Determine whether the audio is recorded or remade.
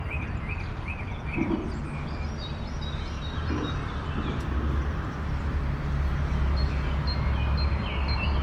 recorded